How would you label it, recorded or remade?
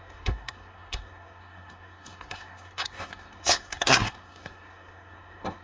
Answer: remade